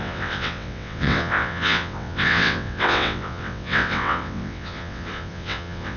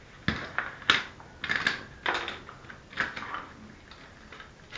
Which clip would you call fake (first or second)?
first